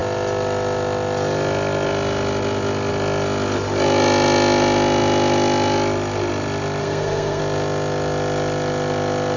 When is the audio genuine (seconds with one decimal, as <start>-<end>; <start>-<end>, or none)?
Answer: 0.0-6.8; 7.4-9.4

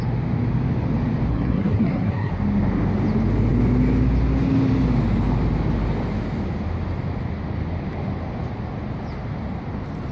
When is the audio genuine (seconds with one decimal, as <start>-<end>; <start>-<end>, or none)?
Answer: 0.0-1.3; 2.3-10.1

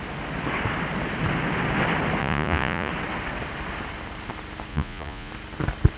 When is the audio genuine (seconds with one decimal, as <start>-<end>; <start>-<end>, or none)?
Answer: 0.0-2.2; 2.9-4.7; 5.3-6.0

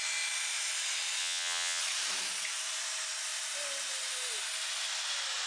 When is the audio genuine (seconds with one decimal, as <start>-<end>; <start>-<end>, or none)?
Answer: 0.0-1.2; 1.8-5.5

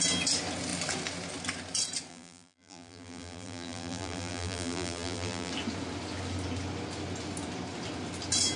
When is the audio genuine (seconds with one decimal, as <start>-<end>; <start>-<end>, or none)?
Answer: 0.0-2.1; 5.5-8.6

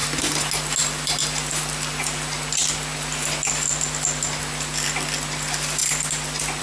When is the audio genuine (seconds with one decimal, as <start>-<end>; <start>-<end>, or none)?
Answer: 0.0-6.6

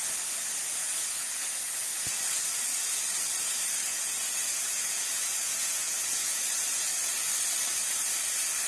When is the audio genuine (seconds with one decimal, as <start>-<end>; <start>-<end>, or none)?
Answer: 0.0-0.8; 1.6-3.9; 6.4-8.7